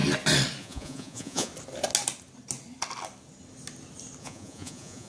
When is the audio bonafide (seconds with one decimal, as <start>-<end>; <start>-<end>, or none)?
0.0-0.6; 1.5-4.2